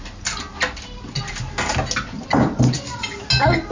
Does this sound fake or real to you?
real